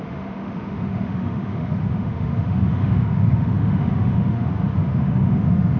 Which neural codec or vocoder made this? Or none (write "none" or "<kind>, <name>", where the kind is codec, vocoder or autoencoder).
autoencoder, DAC-VAE